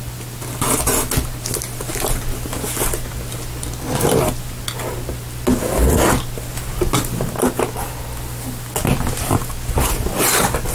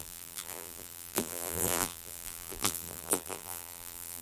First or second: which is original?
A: first